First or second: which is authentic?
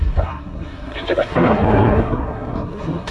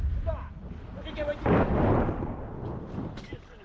second